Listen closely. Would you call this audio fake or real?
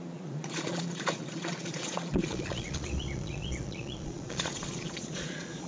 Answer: fake